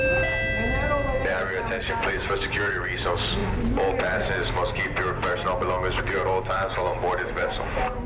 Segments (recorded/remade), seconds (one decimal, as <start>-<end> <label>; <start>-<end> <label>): 0.0-8.1 recorded